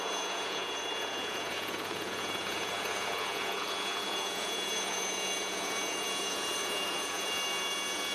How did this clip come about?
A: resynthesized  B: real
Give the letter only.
A